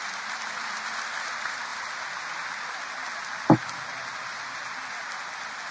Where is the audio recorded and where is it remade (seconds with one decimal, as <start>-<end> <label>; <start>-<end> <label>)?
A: 0.0-5.7 recorded